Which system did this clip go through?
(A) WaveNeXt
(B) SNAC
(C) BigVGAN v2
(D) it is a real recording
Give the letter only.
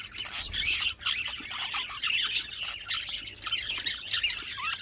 D